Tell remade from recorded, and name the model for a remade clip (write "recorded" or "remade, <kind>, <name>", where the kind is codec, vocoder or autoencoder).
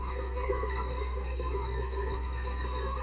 remade, codec, SNAC